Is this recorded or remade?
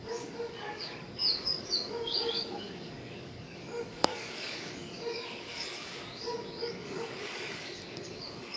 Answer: remade